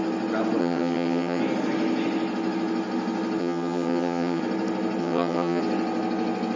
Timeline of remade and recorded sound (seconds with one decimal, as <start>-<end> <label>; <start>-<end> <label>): 0.0-0.6 recorded; 0.6-1.4 remade; 1.4-3.4 recorded; 3.4-4.4 remade; 4.4-5.0 recorded; 5.0-5.6 remade; 5.6-6.6 recorded